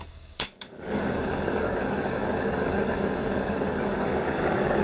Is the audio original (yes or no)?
no